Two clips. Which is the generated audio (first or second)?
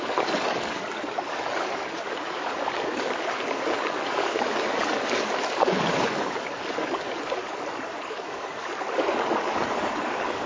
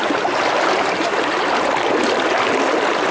first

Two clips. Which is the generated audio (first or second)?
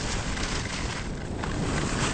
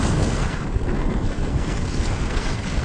second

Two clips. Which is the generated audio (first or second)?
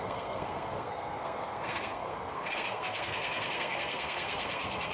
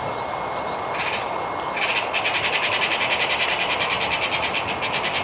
first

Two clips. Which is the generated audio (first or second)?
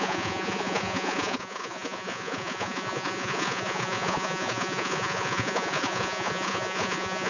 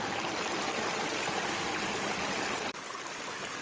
first